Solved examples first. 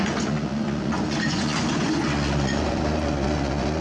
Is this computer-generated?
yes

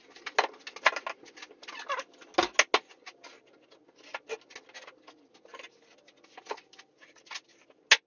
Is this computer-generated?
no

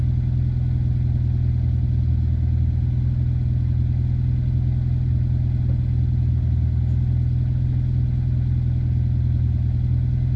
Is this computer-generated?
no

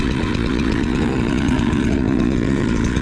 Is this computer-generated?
yes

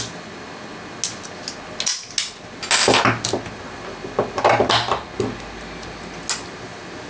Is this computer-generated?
no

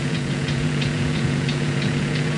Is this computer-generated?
yes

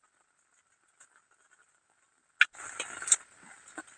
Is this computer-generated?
no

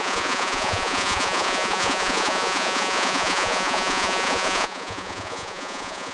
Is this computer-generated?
yes